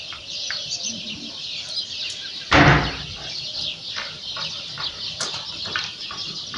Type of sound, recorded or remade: recorded